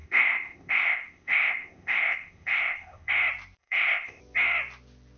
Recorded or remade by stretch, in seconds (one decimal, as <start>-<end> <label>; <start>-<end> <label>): 0.0-3.1 remade; 3.1-3.6 recorded; 3.6-4.2 remade; 4.2-5.2 recorded